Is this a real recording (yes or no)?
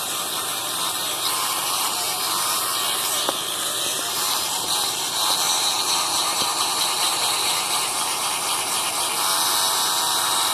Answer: no